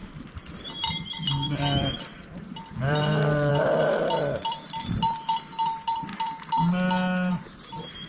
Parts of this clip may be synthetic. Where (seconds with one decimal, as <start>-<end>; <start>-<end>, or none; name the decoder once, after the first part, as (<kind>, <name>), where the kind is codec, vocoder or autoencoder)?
0.0-6.1 (vocoder, BigVGAN v2); 7.3-8.1